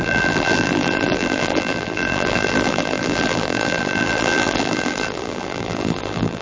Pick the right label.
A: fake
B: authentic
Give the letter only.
A